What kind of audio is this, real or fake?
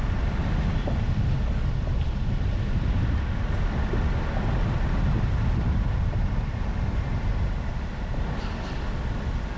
real